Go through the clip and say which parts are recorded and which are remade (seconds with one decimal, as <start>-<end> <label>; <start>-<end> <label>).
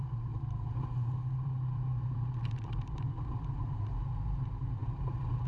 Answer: 0.0-5.5 remade